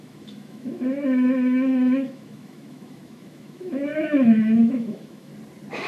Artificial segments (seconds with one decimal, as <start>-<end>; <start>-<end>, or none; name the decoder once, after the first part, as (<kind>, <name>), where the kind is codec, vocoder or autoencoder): 0.0-5.3 (autoencoder, DAC-VAE)